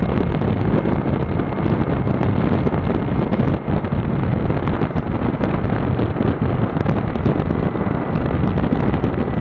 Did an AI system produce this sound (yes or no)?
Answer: no